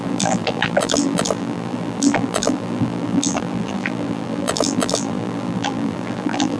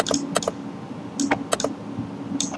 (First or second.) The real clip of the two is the second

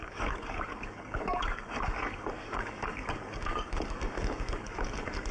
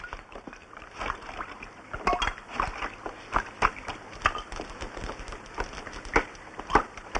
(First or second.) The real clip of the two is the second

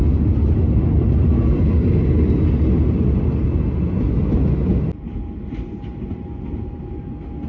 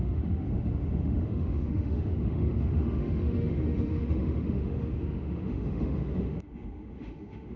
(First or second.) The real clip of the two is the first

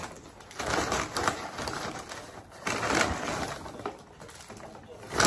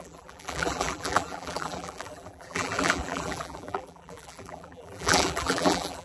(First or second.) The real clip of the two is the first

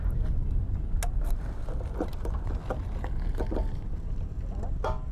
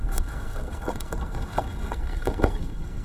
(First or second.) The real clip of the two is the first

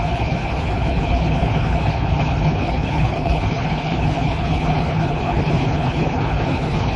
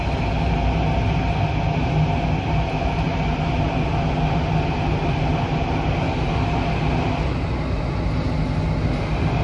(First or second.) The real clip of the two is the second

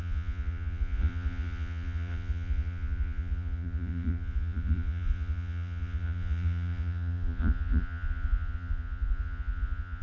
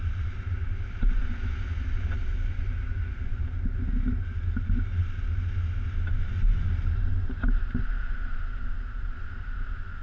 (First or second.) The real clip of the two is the second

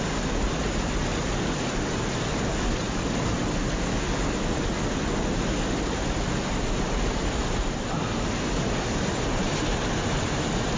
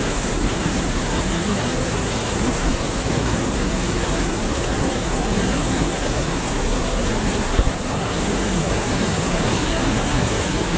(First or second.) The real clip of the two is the first